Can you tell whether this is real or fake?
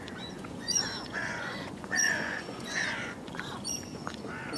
fake